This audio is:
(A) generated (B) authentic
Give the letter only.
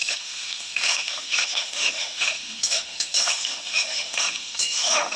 A